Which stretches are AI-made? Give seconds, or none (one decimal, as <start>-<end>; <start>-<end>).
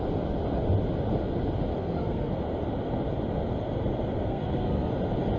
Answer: 1.8-2.3; 4.2-4.9